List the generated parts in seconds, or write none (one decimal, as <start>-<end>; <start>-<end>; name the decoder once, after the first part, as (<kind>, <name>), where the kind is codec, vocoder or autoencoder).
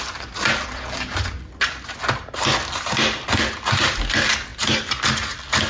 none